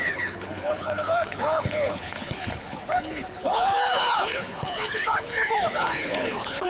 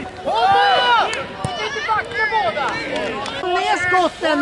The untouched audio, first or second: second